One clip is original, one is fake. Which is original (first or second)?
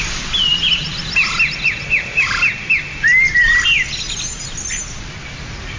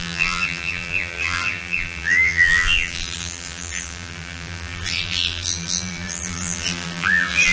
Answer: first